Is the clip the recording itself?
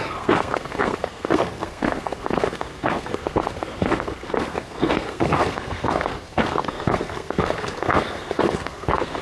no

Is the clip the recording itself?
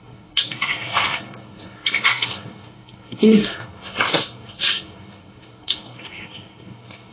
no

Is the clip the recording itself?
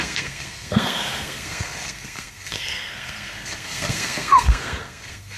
no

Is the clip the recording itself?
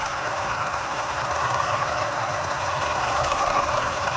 no